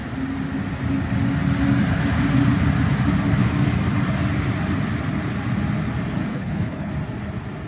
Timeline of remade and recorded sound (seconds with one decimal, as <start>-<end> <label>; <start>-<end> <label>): 0.0-6.3 recorded; 6.3-6.9 remade; 6.9-7.7 recorded